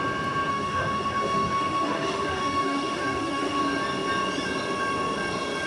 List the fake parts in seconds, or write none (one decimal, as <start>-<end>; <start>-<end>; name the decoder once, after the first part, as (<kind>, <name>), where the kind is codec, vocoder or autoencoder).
0.5-3.6 (autoencoder, DAC-VAE)